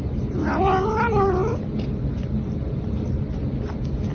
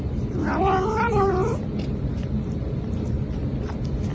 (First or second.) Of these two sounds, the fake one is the second